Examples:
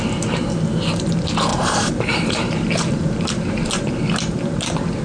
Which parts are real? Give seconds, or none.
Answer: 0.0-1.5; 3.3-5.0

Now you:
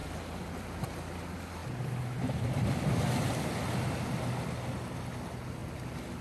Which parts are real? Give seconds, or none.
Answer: 5.6-6.2

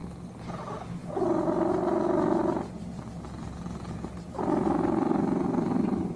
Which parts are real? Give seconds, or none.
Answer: 0.0-6.2

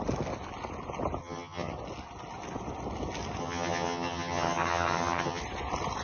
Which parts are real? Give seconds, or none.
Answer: 0.0-1.2; 1.7-3.4; 5.4-6.0

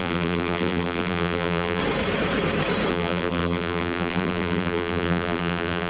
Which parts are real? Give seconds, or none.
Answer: 1.8-2.9

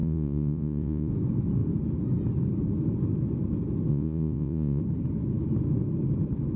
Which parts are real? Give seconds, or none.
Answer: 1.1-3.9; 4.8-6.6

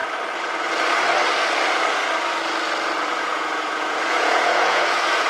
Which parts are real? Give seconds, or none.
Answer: 0.0-3.2

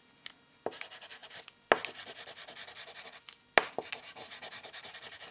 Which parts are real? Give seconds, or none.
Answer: 0.0-5.3